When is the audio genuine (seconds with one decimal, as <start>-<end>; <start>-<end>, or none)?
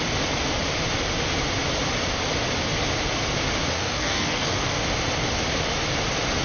0.0-3.7; 4.8-6.4